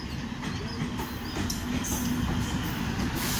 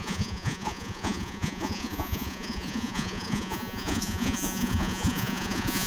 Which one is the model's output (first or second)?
second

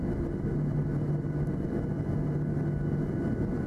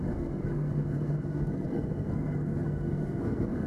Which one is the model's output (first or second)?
second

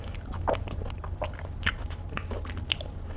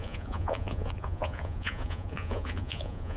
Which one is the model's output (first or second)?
second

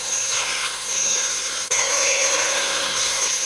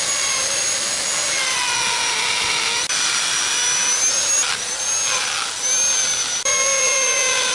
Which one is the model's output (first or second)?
first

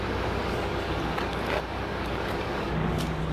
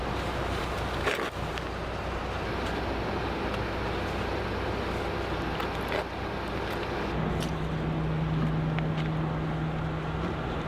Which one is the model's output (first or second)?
first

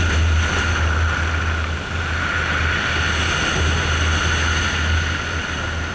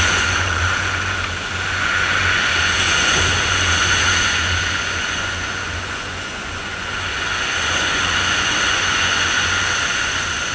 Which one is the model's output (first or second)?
second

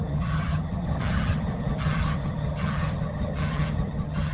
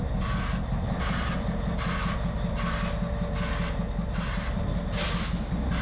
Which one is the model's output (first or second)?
first